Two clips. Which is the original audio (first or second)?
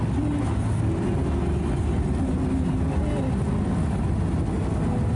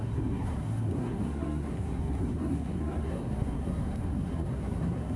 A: first